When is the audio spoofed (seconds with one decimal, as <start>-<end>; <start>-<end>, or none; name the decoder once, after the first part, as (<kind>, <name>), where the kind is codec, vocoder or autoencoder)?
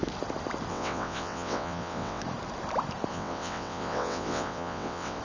0.7-2.2 (vocoder, WaveNeXt); 3.1-5.2